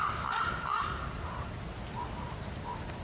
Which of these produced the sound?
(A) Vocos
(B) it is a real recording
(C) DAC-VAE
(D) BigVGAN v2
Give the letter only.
D